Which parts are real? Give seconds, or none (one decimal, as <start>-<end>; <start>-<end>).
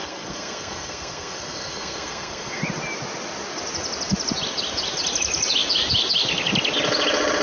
2.6-7.4